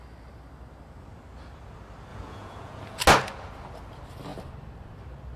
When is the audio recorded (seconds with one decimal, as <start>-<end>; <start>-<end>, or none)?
0.0-2.1; 3.0-5.4